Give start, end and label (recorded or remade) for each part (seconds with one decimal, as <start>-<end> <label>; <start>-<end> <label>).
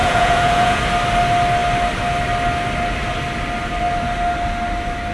0.0-0.8 remade; 0.8-5.1 recorded